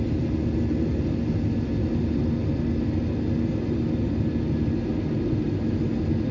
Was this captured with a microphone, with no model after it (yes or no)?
yes